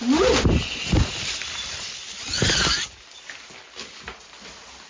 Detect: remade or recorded recorded